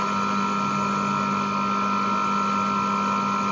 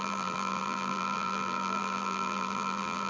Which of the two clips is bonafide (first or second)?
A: first